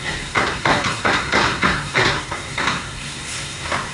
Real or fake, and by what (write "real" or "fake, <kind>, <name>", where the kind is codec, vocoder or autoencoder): fake, codec, SNAC